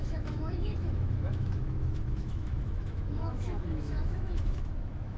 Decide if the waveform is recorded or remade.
remade